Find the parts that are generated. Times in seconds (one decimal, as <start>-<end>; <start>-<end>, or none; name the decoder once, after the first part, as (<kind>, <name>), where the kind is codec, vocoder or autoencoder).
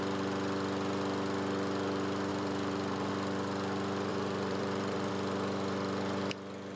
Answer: 2.3-3.1 (vocoder, BigVGAN v2); 4.1-5.1